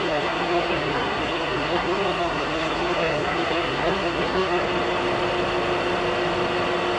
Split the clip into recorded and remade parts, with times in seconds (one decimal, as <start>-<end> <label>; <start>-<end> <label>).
0.0-4.6 remade; 4.6-7.0 recorded